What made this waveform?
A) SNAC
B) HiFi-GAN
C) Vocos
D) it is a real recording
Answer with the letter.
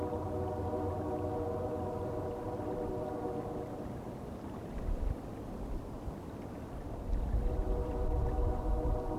D